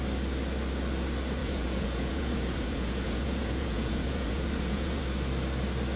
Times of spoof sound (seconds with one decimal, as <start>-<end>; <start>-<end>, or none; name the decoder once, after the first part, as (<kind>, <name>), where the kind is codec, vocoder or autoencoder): 1.4-5.0 (vocoder, Vocos)